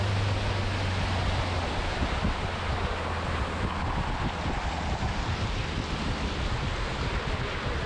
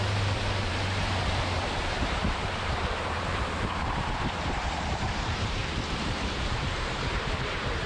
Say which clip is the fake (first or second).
second